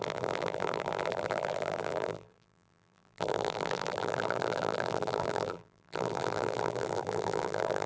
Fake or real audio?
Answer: fake